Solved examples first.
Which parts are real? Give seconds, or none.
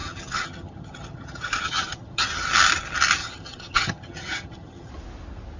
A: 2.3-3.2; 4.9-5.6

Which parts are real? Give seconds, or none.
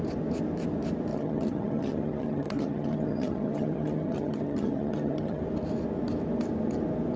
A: 0.0-1.1; 5.4-7.2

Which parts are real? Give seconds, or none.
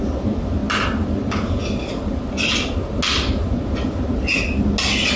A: 0.0-5.2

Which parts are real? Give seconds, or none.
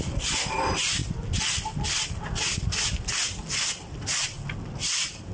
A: 0.0-5.3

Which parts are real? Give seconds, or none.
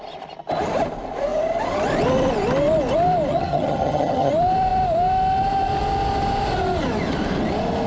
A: 0.0-3.3; 4.3-7.9